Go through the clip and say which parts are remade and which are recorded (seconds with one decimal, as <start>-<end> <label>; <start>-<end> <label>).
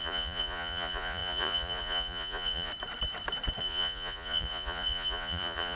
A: 0.0-2.7 remade; 2.7-3.6 recorded; 3.6-5.8 remade